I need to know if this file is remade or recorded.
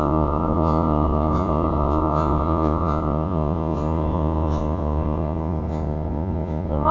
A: remade